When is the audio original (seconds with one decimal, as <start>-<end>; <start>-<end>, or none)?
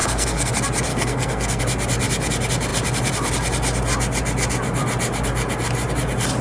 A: 0.5-0.9; 1.6-6.4